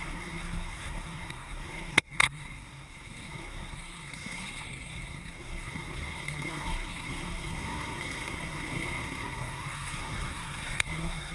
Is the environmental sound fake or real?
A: fake